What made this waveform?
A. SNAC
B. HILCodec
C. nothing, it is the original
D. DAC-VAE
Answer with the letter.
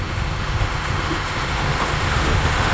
D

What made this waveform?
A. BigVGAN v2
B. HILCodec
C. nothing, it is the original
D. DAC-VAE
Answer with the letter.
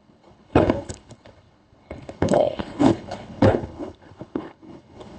B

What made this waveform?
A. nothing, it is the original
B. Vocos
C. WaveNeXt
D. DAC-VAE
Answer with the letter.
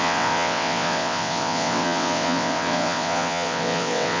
C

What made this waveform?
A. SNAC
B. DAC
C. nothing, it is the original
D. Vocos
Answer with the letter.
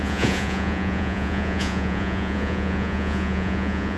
D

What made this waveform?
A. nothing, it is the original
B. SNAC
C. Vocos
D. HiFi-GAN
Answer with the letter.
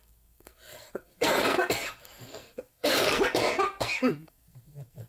B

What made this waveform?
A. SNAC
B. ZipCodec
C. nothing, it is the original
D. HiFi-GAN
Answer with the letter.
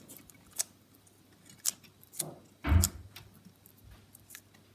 C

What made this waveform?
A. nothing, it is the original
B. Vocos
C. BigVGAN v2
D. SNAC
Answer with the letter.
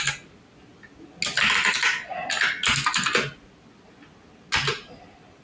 A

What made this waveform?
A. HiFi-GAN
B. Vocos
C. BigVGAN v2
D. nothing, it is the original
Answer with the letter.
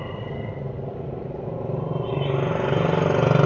D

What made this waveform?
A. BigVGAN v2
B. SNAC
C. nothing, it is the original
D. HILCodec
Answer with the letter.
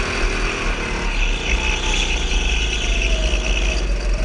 C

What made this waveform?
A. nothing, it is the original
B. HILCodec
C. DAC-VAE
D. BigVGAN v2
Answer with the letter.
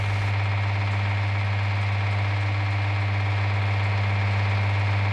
A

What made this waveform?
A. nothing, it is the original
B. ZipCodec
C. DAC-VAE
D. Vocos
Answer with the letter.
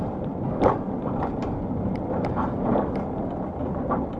A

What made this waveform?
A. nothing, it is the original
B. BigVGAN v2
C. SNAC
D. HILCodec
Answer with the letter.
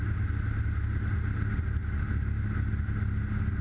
A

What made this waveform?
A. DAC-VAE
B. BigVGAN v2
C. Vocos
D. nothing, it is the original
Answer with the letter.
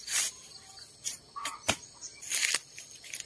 D